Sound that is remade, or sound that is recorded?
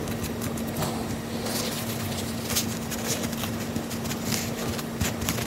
recorded